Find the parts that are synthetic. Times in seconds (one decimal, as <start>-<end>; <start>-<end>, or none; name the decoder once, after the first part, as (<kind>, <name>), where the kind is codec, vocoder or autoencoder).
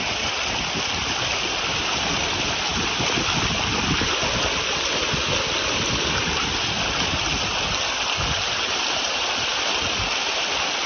none